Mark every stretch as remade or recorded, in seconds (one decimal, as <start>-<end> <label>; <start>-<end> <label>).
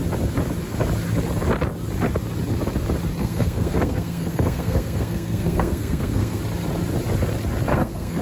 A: 0.0-3.2 recorded; 3.2-6.4 remade; 6.4-7.7 recorded; 7.7-8.2 remade